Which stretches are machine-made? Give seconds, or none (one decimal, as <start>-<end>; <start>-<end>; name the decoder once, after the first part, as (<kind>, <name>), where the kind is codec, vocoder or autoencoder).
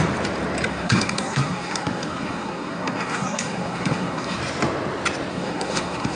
0.7-4.4 (codec, SNAC); 5.3-6.2